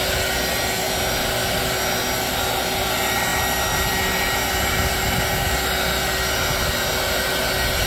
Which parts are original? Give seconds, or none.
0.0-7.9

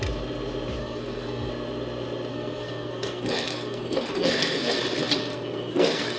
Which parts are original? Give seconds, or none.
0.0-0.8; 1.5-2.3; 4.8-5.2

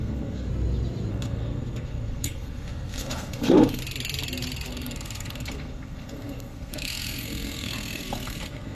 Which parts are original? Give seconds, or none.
0.5-1.1; 3.8-4.7